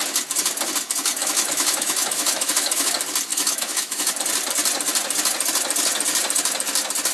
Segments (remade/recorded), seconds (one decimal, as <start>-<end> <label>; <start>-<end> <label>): 0.0-1.2 recorded; 1.2-2.9 remade; 2.9-3.3 recorded; 3.3-4.1 remade; 4.1-7.1 recorded